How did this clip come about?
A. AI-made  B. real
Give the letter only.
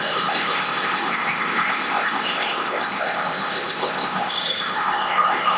A